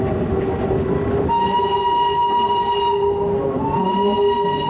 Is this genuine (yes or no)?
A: yes